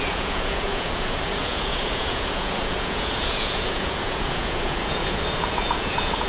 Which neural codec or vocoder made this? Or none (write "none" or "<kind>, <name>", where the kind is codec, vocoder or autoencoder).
vocoder, Vocos